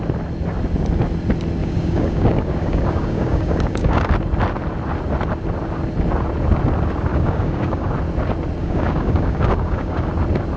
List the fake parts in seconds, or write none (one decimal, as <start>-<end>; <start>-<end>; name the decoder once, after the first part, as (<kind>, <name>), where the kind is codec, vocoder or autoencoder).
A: 1.6-4.1 (codec, DAC); 7.1-7.9; 8.6-10.1